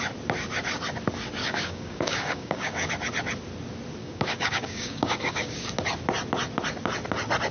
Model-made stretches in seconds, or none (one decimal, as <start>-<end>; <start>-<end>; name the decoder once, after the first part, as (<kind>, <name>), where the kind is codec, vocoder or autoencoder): 1.4-2.9 (codec, DAC); 4.0-5.6